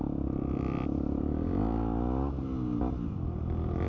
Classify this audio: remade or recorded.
recorded